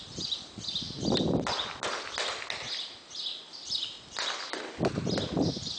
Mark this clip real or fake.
real